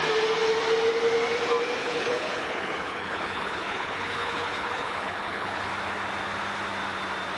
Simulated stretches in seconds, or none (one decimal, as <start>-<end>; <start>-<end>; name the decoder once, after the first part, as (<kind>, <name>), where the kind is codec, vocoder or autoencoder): 1.8-5.7 (codec, HILCodec)